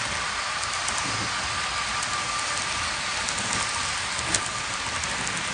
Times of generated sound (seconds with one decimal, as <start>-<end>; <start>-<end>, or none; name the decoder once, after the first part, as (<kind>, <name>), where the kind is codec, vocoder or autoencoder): none

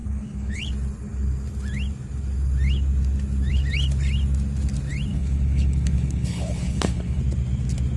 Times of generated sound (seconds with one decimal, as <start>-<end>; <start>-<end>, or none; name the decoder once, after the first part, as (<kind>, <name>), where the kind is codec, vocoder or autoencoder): 0.0-0.7 (codec, HILCodec); 5.1-7.2

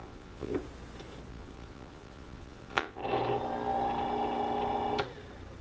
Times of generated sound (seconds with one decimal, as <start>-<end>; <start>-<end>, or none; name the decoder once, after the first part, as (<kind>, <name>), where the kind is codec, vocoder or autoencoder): 0.0-0.5 (vocoder, Vocos); 1.3-3.0

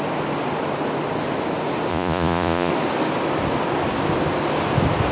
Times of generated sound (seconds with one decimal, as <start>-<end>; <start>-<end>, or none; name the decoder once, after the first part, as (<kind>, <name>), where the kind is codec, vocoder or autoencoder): 1.9-2.7 (vocoder, Vocos)

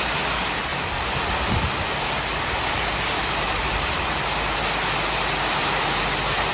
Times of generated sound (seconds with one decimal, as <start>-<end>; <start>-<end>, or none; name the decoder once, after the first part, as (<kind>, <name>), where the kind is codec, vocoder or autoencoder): 0.7-4.0 (vocoder, BigVGAN v2)

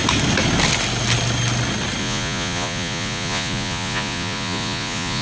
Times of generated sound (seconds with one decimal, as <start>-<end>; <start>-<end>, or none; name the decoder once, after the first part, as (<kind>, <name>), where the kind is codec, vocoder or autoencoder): 2.0-5.2 (vocoder, Vocos)

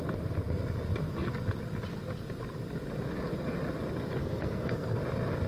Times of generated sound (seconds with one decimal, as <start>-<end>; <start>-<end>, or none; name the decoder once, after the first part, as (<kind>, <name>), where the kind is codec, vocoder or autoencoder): 4.2-5.0 (codec, SNAC)

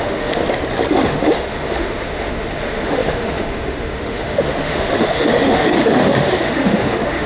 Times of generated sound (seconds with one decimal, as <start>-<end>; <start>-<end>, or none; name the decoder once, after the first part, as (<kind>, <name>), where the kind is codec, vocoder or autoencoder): 0.0-0.4 (autoencoder, DAC-VAE); 0.9-7.3